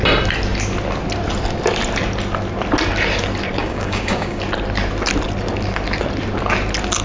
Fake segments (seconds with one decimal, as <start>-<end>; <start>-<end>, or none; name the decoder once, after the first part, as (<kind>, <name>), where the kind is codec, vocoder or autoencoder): 3.6-4.4 (codec, DAC)